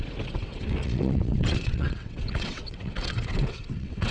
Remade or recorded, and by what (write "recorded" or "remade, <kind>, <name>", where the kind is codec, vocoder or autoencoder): remade, vocoder, WaveNeXt